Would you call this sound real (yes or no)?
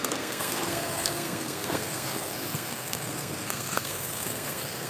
no